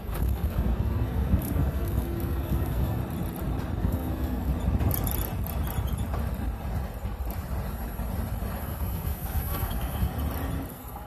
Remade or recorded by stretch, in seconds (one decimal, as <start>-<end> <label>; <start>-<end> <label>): 0.0-3.0 remade; 3.0-3.8 recorded; 3.8-4.5 remade; 4.5-8.6 recorded; 8.6-10.1 remade; 10.1-10.7 recorded; 10.7-11.1 remade